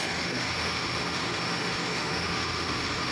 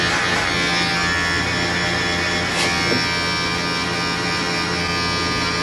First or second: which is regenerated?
first